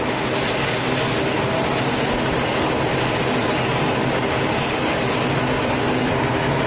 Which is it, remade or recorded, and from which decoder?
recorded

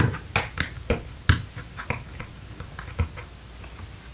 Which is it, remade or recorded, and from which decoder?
recorded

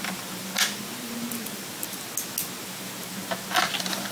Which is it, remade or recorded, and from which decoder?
recorded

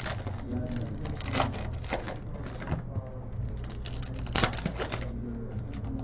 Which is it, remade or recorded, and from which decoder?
recorded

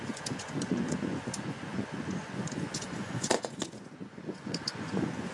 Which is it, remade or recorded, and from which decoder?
remade, vocoder, Vocos